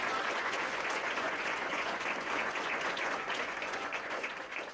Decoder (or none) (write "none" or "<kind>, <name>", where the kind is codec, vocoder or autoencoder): vocoder, Vocos